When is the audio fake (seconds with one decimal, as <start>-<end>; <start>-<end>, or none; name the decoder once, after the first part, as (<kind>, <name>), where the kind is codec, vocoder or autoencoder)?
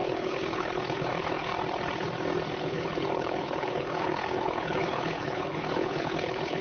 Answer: 0.0-1.5 (codec, HILCodec); 2.6-6.6